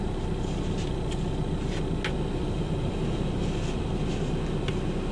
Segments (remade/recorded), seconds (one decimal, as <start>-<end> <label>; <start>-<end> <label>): 0.0-2.3 recorded; 2.3-3.9 remade; 3.9-5.1 recorded